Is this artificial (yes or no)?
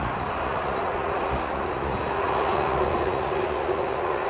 yes